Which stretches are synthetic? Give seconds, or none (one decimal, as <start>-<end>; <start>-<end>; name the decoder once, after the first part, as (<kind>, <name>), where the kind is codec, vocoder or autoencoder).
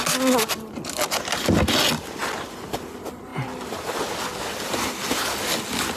none